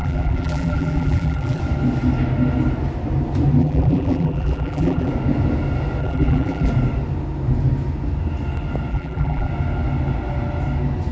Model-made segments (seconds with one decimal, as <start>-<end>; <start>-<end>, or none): 0.0-1.6; 3.6-5.1; 6.0-6.7; 8.9-9.5